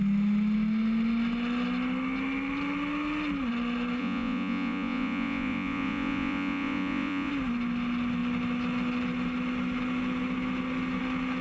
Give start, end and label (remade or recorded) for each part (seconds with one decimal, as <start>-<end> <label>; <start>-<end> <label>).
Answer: 0.0-4.0 recorded; 4.0-7.3 remade; 7.3-11.4 recorded

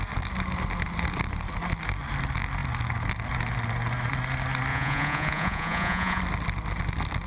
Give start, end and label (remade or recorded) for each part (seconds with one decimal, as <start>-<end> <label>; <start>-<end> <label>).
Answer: 0.0-4.7 recorded; 4.7-6.2 remade; 6.2-7.3 recorded

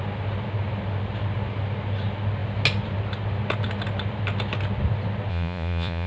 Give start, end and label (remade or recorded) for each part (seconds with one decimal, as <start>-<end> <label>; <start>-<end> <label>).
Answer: 0.0-5.3 recorded; 5.3-6.1 remade

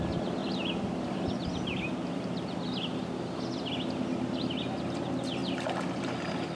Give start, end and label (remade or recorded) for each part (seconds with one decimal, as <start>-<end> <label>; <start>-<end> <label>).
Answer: 0.0-6.6 recorded

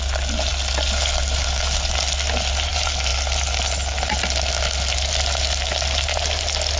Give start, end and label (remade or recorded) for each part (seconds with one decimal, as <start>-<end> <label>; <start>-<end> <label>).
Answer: 0.0-6.8 recorded

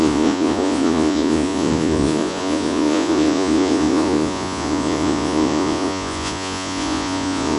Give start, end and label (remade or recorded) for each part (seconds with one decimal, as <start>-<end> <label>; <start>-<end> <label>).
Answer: 0.0-7.6 remade